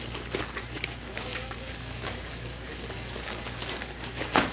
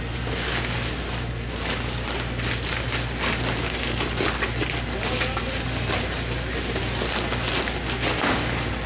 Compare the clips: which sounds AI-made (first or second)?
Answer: first